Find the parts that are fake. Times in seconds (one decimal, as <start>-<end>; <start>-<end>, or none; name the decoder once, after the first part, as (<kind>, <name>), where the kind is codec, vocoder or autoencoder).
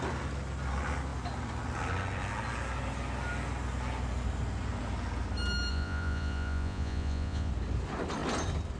5.7-7.5 (vocoder, Vocos)